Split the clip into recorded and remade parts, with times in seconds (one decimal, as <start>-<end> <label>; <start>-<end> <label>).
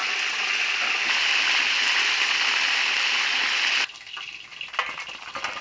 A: 0.0-5.6 recorded